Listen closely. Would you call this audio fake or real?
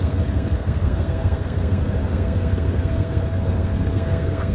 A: fake